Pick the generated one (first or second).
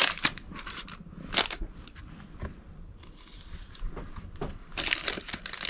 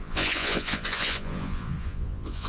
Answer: second